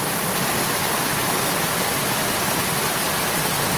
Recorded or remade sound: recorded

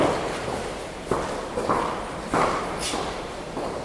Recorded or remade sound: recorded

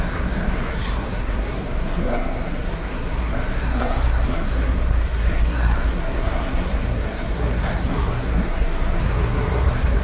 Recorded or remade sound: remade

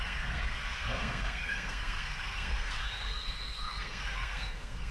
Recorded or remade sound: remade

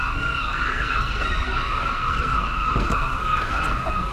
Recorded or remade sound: remade